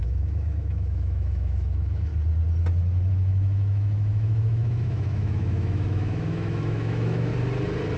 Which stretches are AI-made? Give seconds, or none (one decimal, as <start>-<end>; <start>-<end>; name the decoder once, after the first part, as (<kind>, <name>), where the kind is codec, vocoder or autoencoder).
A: 0.0-2.1 (autoencoder, DAC-VAE); 3.1-7.3